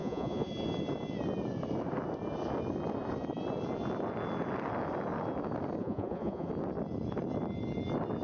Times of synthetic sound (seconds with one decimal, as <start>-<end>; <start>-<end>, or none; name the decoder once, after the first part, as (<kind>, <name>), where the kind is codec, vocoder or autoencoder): 0.0-0.5 (vocoder, Vocos); 5.8-6.5